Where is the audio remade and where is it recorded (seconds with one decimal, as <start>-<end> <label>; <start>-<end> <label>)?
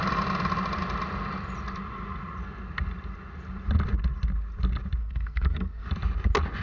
0.0-5.0 recorded; 5.0-5.9 remade; 5.9-6.6 recorded